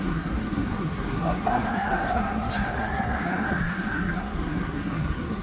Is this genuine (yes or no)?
no